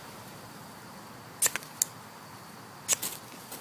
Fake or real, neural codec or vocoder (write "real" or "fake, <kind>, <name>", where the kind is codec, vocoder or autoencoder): real